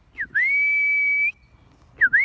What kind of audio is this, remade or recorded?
recorded